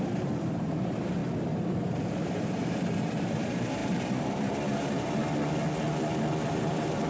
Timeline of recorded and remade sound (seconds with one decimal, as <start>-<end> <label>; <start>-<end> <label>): 0.0-1.2 remade; 1.2-1.7 recorded; 1.7-5.2 remade; 5.2-6.5 recorded; 6.5-7.1 remade